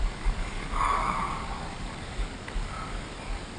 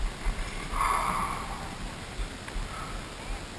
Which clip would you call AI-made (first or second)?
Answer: first